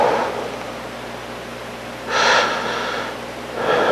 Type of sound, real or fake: real